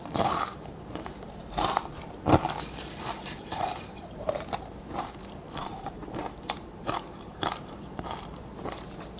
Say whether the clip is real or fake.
fake